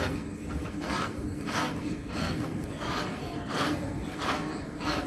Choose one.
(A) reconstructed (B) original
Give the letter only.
A